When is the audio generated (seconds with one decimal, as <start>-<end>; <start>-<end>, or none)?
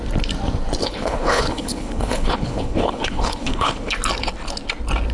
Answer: 0.8-3.9